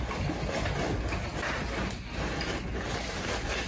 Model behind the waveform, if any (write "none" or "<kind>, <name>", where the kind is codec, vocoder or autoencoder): none